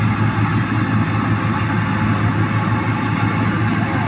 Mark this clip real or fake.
real